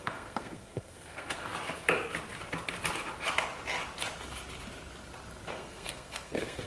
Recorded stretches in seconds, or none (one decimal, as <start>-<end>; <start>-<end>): 1.5-5.5